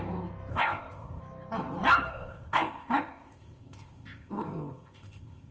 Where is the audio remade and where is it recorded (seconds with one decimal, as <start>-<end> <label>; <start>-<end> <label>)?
0.0-0.5 recorded; 0.5-1.2 remade; 1.2-2.1 recorded; 2.1-5.5 remade

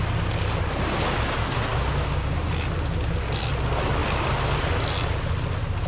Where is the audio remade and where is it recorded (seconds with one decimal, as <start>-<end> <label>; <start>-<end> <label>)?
0.0-4.0 recorded; 4.0-4.6 remade; 4.6-5.9 recorded

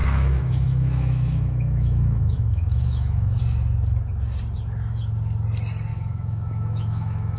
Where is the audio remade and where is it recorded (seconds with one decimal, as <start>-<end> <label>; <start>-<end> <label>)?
0.0-3.4 remade; 3.4-5.9 recorded; 5.9-7.4 remade

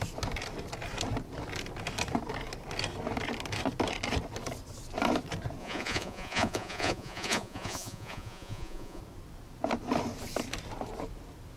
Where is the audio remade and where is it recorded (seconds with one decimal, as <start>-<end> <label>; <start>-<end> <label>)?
0.0-5.6 recorded; 5.6-9.0 remade; 9.0-11.6 recorded

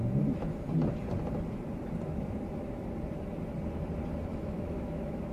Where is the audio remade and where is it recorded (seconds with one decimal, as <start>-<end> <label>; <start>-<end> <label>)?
0.0-4.3 recorded; 4.3-5.3 remade

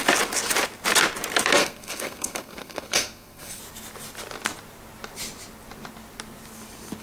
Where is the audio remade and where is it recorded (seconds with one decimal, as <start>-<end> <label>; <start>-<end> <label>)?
0.0-1.6 recorded; 1.6-3.6 remade; 3.6-7.0 recorded

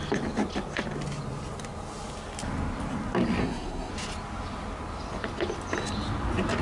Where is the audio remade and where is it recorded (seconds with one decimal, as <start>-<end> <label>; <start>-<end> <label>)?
0.0-3.4 recorded; 3.4-3.9 remade; 3.9-6.6 recorded

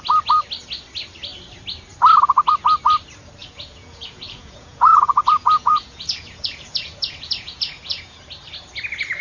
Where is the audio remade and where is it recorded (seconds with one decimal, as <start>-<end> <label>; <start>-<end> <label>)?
0.0-3.4 recorded; 3.4-8.2 remade; 8.2-9.2 recorded